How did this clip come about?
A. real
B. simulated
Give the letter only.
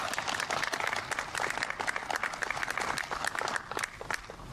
A